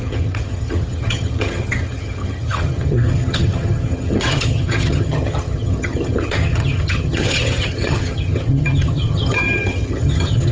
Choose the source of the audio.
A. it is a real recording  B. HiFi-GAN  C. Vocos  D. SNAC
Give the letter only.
B